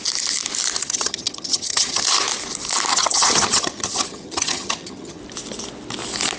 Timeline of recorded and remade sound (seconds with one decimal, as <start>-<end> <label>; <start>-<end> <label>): 0.0-0.8 recorded; 0.8-2.0 remade; 2.0-2.9 recorded; 2.9-5.2 remade; 5.2-6.4 recorded